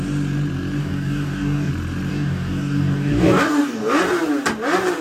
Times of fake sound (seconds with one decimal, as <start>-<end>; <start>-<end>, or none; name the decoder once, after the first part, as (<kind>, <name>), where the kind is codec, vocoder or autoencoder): 0.8-1.7 (codec, DAC); 2.1-4.0